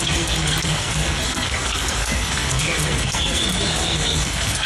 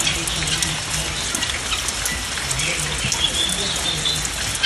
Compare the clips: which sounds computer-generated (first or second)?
first